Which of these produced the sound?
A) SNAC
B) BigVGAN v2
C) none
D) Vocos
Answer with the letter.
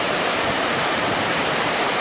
B